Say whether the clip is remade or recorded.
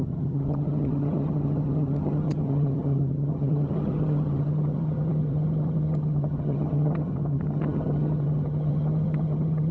remade